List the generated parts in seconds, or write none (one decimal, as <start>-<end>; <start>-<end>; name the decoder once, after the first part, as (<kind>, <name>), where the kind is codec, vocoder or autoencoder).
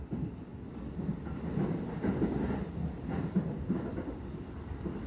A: 0.0-0.5 (vocoder, BigVGAN v2); 1.8-5.1